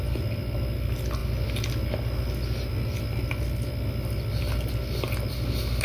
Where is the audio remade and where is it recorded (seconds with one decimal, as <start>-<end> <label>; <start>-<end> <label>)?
0.0-5.8 recorded